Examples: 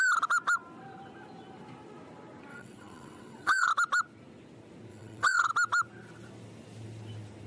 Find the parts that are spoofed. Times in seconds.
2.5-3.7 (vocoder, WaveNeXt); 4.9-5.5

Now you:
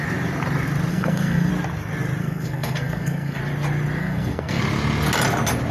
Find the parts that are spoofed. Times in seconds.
0.9-1.5 (codec, SNAC); 2.2-3.4; 4.0-4.6